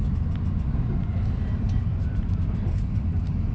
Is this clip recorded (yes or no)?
yes